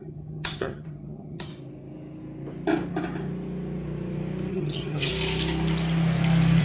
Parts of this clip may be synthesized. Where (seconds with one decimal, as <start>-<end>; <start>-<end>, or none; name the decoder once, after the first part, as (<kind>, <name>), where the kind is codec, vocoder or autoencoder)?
0.0-1.5 (vocoder, HiFi-GAN); 4.5-5.1